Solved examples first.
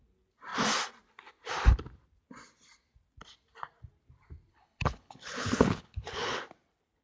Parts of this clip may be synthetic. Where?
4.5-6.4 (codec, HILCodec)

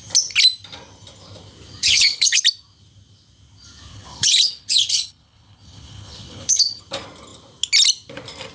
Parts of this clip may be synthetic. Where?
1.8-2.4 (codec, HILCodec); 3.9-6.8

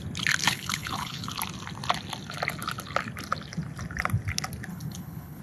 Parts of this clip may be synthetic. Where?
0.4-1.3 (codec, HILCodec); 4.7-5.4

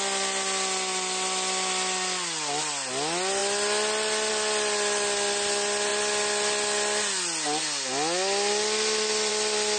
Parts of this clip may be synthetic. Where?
none

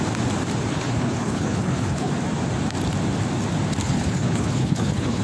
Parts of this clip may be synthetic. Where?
0.7-2.1 (codec, HILCodec); 3.8-5.2

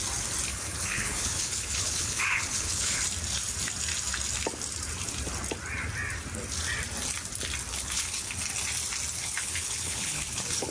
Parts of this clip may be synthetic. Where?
0.5-3.0 (codec, HILCodec); 7.7-8.3; 9.2-10.7

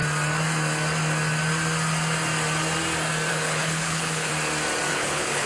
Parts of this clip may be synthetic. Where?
3.3-4.3 (codec, HILCodec); 4.9-5.5

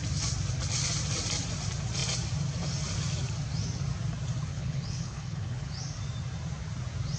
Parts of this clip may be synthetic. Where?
4.5-5.7 (codec, HILCodec)